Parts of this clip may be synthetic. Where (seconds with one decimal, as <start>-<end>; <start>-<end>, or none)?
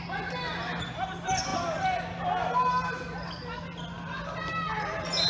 none